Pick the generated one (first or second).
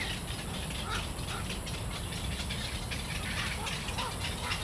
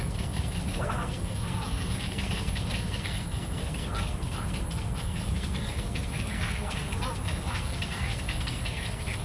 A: second